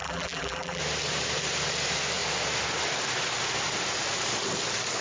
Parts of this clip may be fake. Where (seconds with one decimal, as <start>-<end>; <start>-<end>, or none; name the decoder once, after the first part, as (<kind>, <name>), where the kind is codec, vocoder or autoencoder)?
0.0-0.8 (vocoder, BigVGAN v2)